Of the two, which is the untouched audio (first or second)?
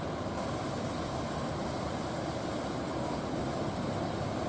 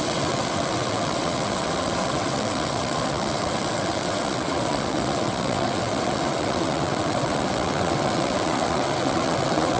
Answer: first